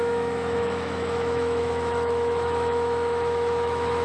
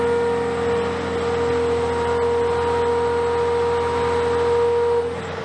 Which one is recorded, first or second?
second